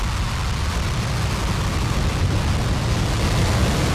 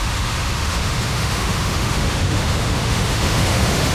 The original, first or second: first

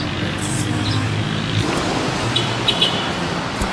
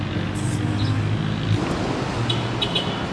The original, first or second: second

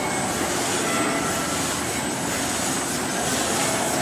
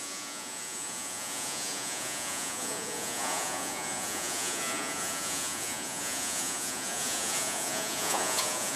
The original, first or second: first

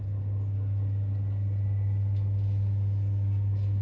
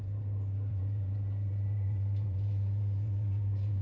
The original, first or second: first